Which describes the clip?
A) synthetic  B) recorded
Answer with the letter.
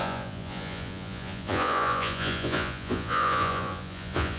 A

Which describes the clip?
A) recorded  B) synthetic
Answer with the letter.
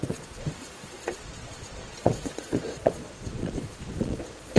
B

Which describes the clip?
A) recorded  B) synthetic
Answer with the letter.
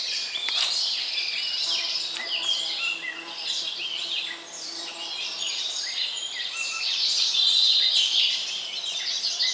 A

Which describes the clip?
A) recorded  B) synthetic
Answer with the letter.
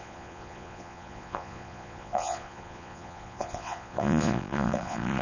B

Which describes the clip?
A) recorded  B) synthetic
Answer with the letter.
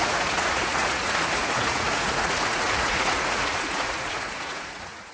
B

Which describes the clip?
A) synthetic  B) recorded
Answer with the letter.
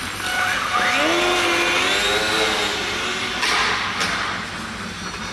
B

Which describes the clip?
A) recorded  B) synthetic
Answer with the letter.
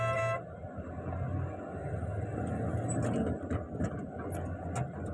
A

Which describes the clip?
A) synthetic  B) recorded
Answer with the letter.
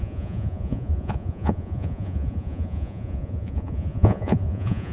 A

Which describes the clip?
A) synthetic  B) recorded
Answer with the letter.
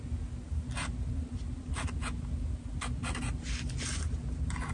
B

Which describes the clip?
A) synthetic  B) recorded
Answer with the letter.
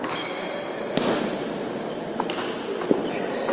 B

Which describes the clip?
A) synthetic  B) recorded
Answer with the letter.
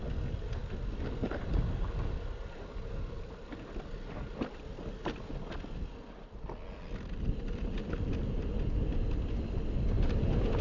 B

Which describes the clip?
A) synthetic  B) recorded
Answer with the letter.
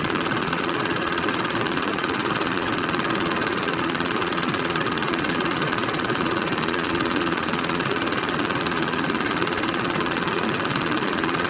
A